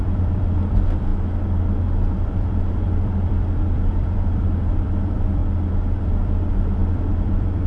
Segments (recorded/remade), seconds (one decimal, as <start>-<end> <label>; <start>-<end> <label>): 0.0-1.1 remade; 1.1-2.1 recorded; 2.1-5.4 remade; 5.4-6.0 recorded; 6.0-7.7 remade